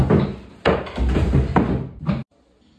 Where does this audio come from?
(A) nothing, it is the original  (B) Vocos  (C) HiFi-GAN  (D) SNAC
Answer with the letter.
A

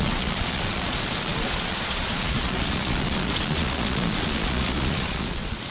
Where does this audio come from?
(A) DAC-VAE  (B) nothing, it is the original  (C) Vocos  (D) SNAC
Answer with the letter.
C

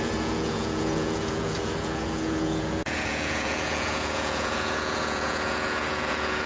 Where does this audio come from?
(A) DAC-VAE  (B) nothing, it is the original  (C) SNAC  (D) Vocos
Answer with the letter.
D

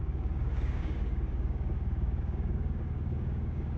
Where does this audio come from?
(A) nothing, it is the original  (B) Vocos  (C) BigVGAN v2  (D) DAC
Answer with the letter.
D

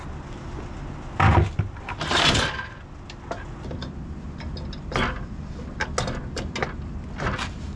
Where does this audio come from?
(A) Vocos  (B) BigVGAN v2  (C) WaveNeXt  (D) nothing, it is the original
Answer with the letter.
D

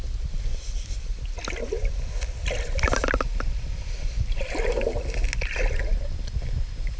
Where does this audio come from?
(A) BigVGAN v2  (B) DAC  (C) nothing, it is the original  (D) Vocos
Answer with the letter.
C